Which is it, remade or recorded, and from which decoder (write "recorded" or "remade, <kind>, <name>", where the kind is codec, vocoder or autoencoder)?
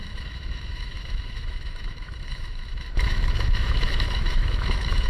remade, autoencoder, DAC-VAE